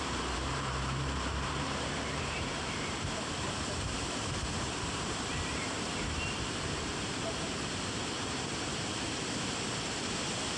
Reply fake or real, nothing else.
fake